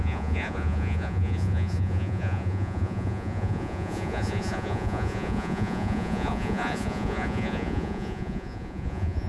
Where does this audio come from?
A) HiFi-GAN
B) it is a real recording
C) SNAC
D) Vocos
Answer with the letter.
D